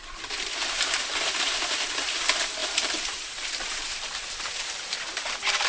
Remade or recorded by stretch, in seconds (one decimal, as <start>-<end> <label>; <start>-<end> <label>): 0.0-0.7 remade; 0.7-2.6 recorded; 2.6-5.7 remade